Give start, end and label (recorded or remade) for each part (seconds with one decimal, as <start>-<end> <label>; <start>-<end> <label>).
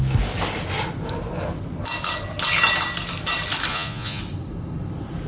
0.0-3.7 recorded; 3.7-4.2 remade; 4.2-5.3 recorded